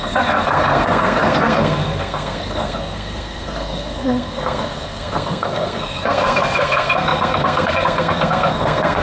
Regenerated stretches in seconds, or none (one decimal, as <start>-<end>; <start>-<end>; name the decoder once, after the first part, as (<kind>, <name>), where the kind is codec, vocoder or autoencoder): 0.0-9.0 (codec, SNAC)